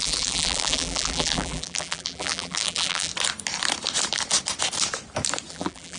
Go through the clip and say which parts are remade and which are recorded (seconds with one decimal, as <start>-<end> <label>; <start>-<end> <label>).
0.0-3.1 remade; 3.1-5.5 recorded; 5.5-6.0 remade